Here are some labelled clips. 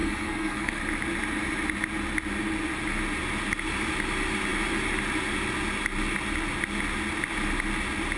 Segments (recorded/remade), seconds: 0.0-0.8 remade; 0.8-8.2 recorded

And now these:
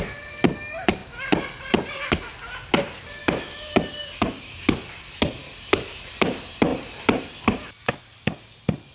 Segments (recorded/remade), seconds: 0.0-3.2 recorded; 3.2-3.8 remade; 3.8-8.9 recorded

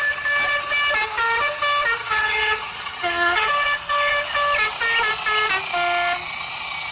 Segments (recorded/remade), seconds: 0.0-2.0 recorded; 2.0-3.5 remade; 3.5-6.9 recorded

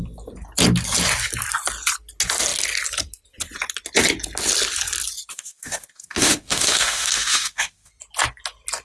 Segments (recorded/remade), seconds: 0.0-5.3 recorded; 5.3-7.9 remade; 7.9-8.8 recorded

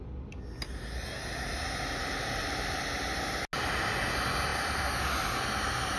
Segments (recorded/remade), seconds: 0.0-2.0 recorded; 2.0-2.8 remade; 2.8-6.0 recorded

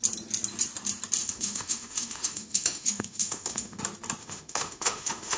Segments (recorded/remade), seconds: 0.0-1.2 recorded; 1.2-3.8 remade; 3.8-4.2 recorded; 4.2-5.4 remade

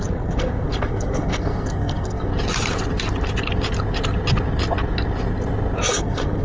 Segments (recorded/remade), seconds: 0.0-2.3 remade; 2.3-5.9 recorded; 5.9-6.4 remade

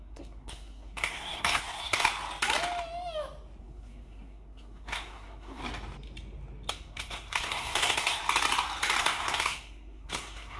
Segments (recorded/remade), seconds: 0.0-2.1 remade; 2.1-3.6 recorded; 3.6-5.6 remade; 5.6-6.7 recorded; 6.7-8.2 remade; 8.2-9.0 recorded; 9.0-10.6 remade